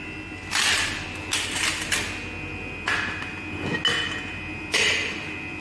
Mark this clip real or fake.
real